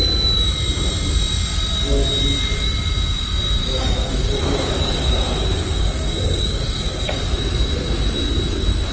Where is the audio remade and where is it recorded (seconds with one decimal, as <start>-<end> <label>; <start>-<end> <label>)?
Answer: 0.0-3.6 recorded; 3.6-7.2 remade; 7.2-8.9 recorded